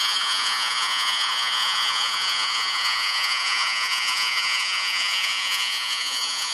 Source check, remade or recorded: remade